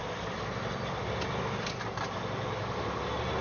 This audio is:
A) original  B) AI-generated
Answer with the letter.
A